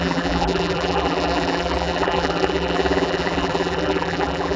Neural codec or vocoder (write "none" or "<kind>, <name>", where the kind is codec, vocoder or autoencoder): vocoder, BigVGAN v2